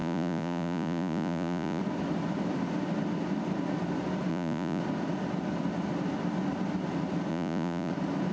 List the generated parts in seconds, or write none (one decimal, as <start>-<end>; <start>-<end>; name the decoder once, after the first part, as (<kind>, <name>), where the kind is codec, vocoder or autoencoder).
0.0-1.8 (vocoder, Vocos); 4.3-4.8; 7.3-7.9